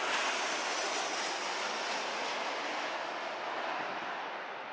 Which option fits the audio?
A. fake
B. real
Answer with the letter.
B